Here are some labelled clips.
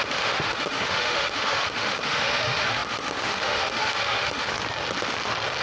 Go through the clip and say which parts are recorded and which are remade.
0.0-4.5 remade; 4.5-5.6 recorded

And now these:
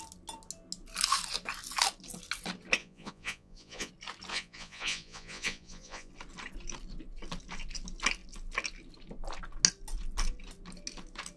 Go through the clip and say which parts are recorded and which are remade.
0.0-2.8 recorded; 2.8-3.9 remade; 3.9-4.3 recorded; 4.3-6.1 remade; 6.1-11.4 recorded

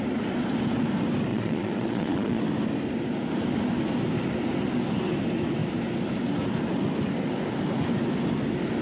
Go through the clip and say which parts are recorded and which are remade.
0.0-1.3 recorded; 1.3-2.4 remade; 2.4-8.8 recorded